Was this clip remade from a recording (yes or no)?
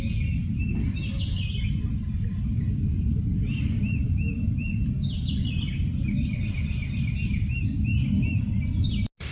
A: no